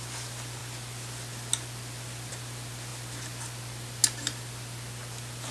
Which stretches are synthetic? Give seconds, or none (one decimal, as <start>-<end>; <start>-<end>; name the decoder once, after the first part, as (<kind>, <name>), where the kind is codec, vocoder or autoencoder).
none